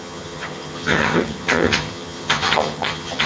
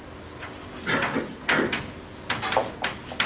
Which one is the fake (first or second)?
first